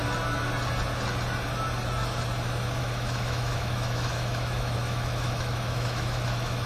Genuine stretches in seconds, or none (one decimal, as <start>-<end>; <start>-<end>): 0.0-2.8